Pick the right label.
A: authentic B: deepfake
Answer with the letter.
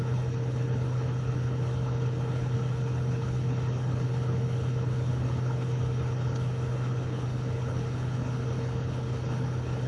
B